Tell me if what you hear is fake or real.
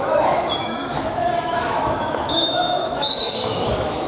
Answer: fake